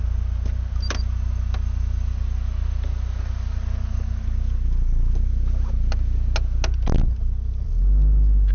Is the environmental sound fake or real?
real